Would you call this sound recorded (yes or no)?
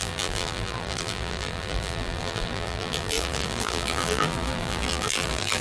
no